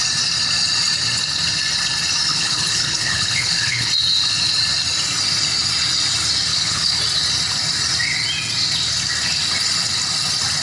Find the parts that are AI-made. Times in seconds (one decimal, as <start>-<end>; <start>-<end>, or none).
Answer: 2.3-3.9; 6.5-7.0